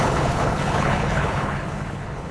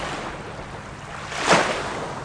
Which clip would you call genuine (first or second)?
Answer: second